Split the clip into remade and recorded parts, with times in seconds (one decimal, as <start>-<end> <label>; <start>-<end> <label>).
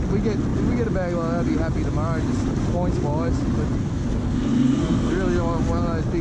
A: 0.0-3.8 recorded; 3.8-5.1 remade; 5.1-6.2 recorded